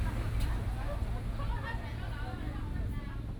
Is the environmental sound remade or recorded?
recorded